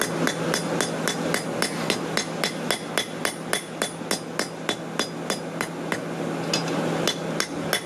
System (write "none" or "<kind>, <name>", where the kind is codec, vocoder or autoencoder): none